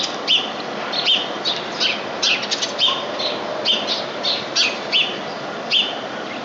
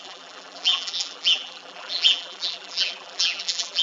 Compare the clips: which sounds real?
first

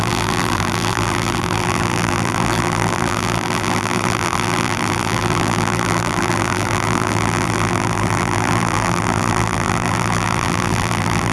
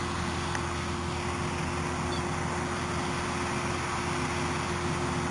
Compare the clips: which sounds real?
second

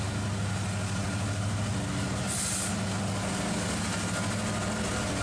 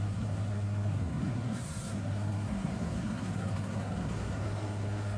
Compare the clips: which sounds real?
first